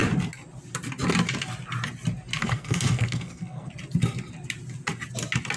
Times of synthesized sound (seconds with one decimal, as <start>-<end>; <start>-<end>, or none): 2.4-3.7